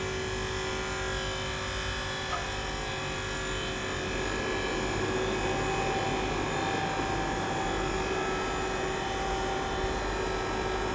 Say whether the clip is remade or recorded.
recorded